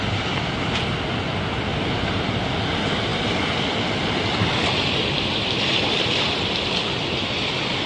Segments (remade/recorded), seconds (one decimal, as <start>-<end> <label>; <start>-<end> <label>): 0.0-1.7 recorded; 1.7-2.3 remade; 2.3-7.9 recorded